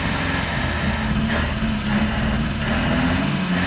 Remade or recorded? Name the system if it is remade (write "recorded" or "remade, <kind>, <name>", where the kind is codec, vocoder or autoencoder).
recorded